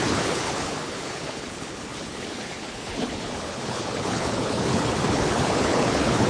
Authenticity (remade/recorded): remade